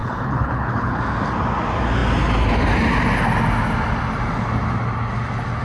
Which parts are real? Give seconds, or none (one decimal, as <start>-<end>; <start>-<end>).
1.0-5.6